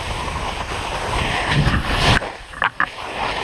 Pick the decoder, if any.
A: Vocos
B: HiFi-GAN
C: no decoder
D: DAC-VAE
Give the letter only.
C